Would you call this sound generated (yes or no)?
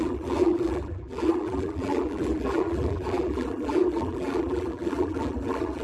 yes